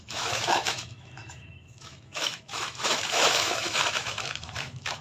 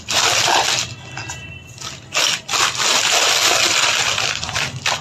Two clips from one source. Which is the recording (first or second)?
second